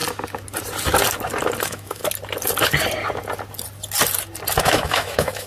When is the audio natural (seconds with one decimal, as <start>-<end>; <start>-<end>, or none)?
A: 0.0-1.6; 2.0-4.6